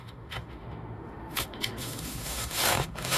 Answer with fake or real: fake